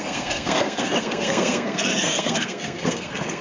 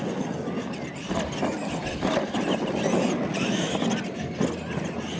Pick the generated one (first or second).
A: first